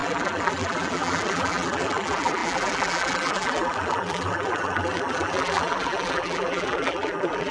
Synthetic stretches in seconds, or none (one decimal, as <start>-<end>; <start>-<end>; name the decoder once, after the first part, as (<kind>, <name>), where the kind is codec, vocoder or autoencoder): 0.0-7.5 (vocoder, BigVGAN v2)